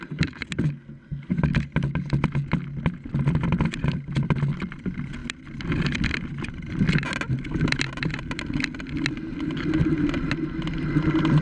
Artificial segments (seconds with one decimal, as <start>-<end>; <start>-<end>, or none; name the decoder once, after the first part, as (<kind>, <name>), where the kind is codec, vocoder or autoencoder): none